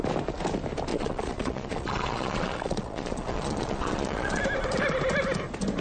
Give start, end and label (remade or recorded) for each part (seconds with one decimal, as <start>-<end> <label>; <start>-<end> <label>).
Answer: 0.0-0.9 recorded; 0.9-4.4 remade; 4.4-5.8 recorded